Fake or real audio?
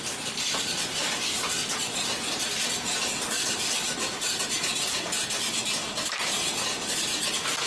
real